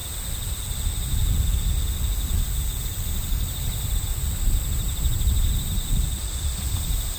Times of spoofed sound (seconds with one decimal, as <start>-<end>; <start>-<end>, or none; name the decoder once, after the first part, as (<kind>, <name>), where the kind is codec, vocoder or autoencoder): 2.9-5.9 (vocoder, BigVGAN v2)